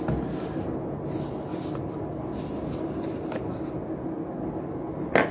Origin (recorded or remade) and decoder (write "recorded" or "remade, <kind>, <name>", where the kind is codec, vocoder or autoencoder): recorded